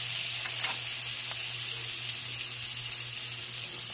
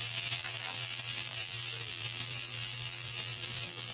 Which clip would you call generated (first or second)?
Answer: second